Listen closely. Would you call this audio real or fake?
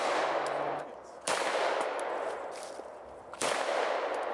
real